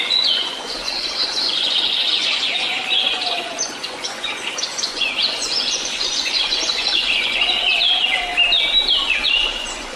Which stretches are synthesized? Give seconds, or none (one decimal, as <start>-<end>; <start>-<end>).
0.0-8.3; 9.0-10.0